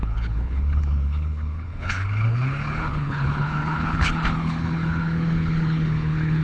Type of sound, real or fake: fake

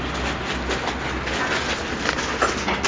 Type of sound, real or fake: real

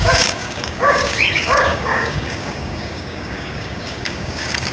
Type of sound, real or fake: fake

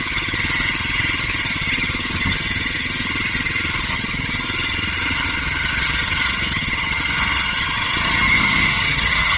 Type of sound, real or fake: fake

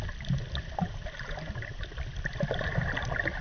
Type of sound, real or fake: real